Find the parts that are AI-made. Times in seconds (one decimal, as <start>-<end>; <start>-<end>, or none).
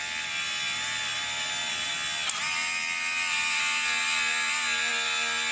none